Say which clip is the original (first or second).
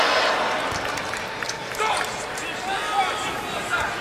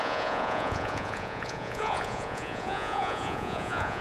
first